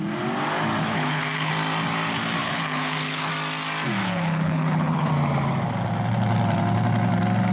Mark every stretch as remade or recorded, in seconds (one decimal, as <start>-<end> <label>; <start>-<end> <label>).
0.0-0.8 recorded; 0.8-1.5 remade; 1.5-2.4 recorded; 2.4-3.3 remade; 3.3-4.0 recorded; 4.0-5.1 remade; 5.1-7.5 recorded